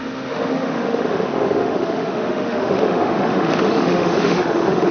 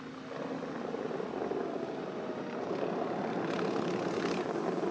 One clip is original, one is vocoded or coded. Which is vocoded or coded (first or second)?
first